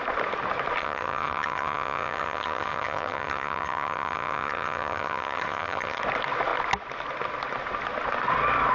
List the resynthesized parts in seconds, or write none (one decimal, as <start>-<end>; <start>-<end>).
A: 0.8-6.0